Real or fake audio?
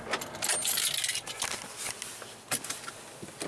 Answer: real